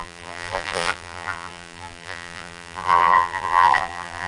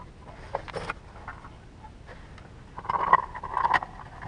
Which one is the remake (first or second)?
first